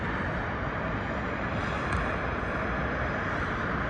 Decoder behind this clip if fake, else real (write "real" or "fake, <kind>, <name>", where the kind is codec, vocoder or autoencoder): real